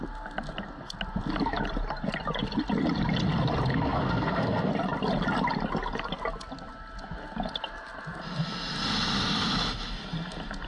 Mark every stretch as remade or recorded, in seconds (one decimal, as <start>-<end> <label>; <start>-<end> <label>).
0.0-3.7 recorded; 3.7-4.7 remade; 4.7-10.7 recorded